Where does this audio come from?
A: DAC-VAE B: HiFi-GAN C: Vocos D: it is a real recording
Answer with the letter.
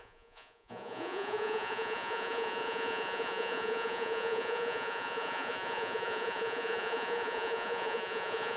C